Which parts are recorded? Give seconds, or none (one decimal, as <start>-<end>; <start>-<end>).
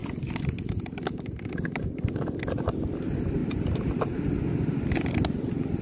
2.1-3.4; 4.2-5.8